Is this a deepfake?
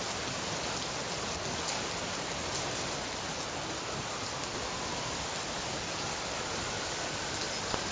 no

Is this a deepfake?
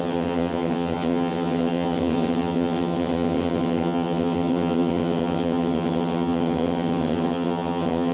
yes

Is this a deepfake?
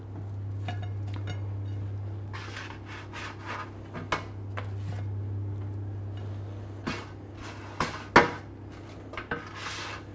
no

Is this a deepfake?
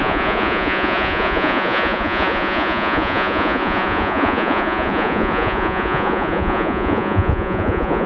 yes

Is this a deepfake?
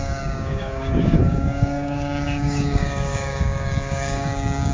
yes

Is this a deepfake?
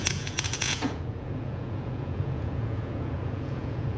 yes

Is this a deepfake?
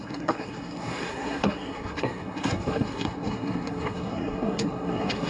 yes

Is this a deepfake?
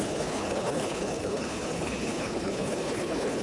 yes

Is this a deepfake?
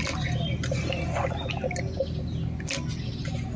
no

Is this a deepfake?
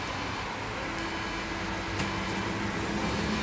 no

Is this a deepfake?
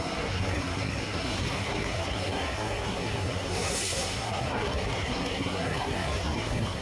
yes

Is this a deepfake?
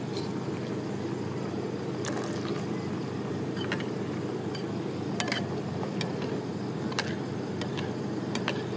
no